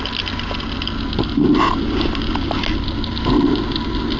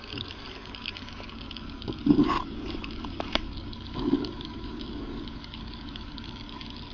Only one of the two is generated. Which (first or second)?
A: second